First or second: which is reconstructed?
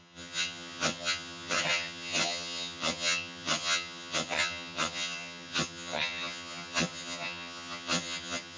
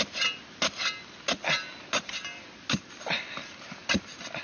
first